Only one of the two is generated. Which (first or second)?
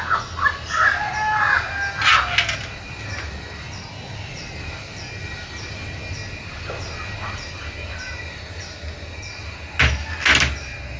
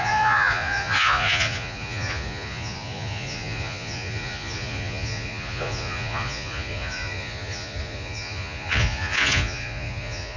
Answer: second